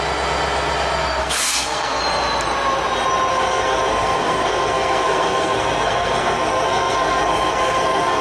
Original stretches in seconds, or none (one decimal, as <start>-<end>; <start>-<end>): 0.0-1.2; 2.0-3.3